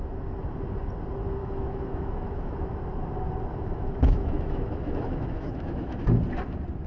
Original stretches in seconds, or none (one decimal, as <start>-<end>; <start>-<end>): 0.0-1.4; 2.8-3.5; 6.1-6.9